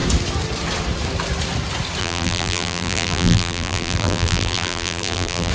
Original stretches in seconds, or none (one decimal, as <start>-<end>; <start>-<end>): 0.0-2.0